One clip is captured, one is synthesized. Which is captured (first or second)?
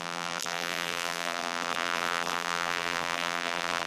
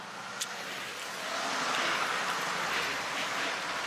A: second